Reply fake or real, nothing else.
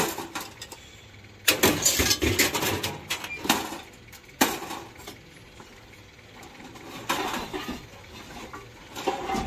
real